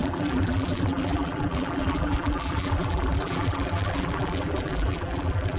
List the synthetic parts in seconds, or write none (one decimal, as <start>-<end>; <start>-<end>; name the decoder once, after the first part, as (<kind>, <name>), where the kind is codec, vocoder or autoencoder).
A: 0.0-5.6 (vocoder, BigVGAN v2)